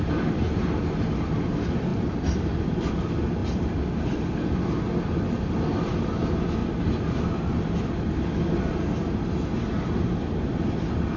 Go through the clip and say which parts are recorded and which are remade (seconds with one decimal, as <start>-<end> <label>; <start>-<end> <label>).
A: 0.0-1.9 recorded; 1.9-2.6 remade; 2.6-3.4 recorded; 3.4-4.9 remade; 4.9-6.6 recorded; 6.6-8.3 remade; 8.3-11.2 recorded